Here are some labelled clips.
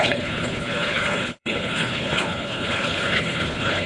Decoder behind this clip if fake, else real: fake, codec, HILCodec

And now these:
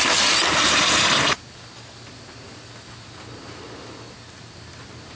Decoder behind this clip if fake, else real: real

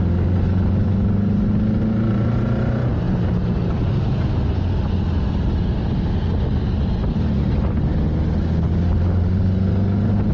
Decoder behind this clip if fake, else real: real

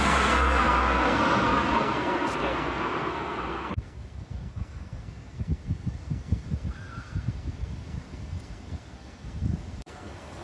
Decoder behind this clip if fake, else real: fake, codec, SNAC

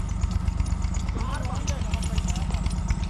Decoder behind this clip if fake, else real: real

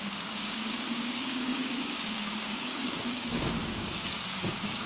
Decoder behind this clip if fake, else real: fake, codec, DAC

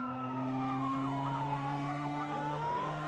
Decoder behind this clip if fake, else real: fake, autoencoder, DAC-VAE